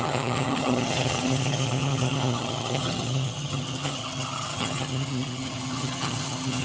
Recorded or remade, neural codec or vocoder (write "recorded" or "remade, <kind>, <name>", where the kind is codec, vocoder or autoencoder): remade, vocoder, HiFi-GAN